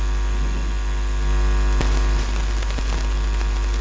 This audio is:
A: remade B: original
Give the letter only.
B